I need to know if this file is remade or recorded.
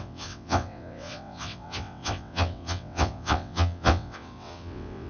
remade